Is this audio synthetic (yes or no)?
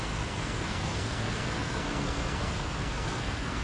yes